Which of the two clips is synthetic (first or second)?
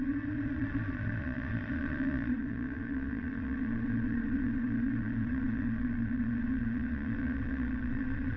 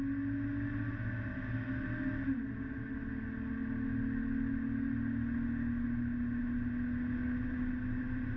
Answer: first